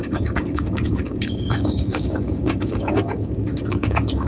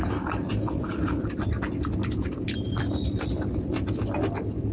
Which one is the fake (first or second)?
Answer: first